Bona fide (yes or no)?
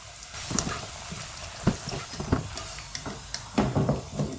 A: yes